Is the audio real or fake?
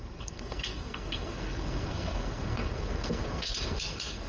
fake